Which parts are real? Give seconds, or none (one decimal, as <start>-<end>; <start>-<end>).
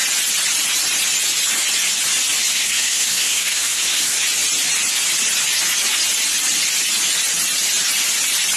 0.0-2.5; 4.2-8.6